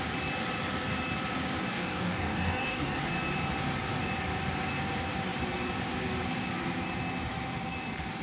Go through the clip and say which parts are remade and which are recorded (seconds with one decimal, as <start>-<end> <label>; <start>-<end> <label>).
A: 0.0-1.7 recorded; 1.7-3.0 remade; 3.0-8.2 recorded